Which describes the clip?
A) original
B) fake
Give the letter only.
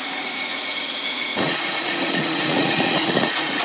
B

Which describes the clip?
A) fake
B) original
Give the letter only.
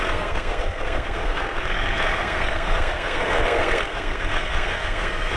A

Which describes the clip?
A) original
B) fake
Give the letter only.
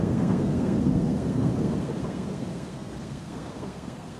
B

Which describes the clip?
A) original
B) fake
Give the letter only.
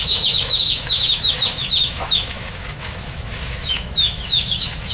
B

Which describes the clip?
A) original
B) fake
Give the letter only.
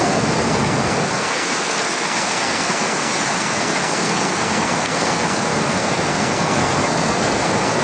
B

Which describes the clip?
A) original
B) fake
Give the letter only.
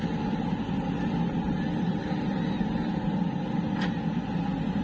A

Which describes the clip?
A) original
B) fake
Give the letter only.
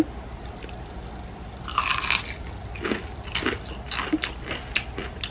A